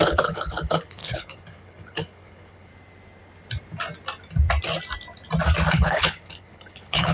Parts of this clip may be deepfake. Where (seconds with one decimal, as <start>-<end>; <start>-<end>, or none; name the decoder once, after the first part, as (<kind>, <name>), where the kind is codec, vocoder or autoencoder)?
0.0-2.7 (codec, HILCodec); 5.7-7.1